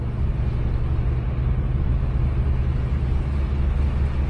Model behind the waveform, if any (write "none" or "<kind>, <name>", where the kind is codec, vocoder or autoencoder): none